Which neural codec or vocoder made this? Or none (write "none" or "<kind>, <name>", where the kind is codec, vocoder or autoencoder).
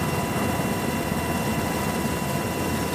none